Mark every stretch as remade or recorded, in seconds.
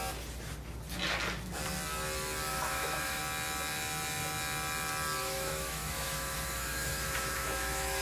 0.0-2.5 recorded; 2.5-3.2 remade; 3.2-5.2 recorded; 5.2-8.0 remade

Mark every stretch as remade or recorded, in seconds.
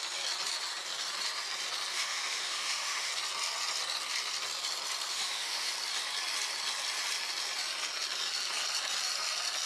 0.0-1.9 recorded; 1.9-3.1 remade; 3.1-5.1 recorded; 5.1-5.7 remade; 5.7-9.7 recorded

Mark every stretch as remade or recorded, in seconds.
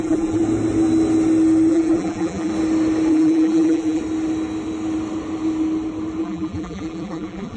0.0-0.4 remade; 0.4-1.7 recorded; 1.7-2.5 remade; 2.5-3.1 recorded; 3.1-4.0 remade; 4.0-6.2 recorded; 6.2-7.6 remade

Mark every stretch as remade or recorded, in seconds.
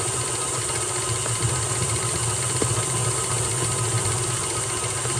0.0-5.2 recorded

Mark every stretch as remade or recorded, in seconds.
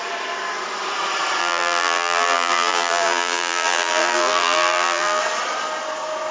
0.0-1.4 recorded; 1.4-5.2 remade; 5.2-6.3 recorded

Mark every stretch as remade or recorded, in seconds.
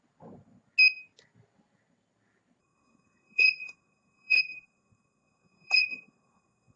0.0-2.6 recorded; 2.6-6.8 remade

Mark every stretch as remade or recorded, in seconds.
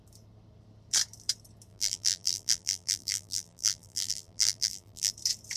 0.0-1.7 recorded; 1.7-5.1 remade; 5.1-5.6 recorded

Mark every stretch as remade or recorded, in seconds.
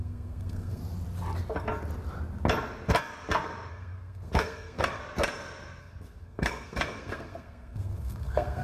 0.0-0.8 remade; 0.8-3.7 recorded; 3.7-5.0 remade; 5.0-5.8 recorded; 5.8-8.6 remade